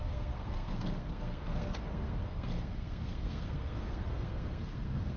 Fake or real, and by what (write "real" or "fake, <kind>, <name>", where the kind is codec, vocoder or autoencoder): fake, codec, SNAC